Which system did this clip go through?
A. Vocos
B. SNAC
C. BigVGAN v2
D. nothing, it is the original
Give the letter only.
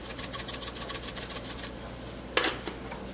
D